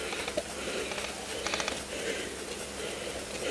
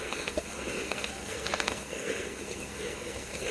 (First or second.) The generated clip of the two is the second